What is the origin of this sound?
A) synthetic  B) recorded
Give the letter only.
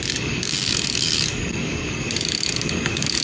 A